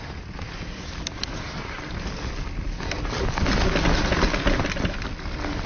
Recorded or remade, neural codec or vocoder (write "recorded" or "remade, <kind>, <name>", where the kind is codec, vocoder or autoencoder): recorded